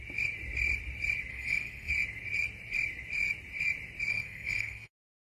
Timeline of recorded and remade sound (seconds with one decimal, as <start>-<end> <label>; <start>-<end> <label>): 0.0-1.3 recorded; 1.3-1.9 remade; 1.9-4.1 recorded; 4.1-5.2 remade